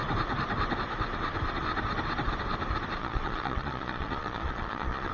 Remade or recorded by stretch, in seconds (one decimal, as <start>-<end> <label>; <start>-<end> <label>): 0.0-3.0 recorded; 3.0-5.1 remade